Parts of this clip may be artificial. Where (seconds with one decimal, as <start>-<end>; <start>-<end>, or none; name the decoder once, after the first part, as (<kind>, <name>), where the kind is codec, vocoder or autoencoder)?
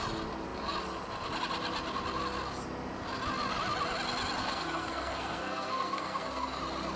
4.4-6.6 (codec, SNAC)